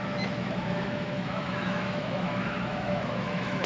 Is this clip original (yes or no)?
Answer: no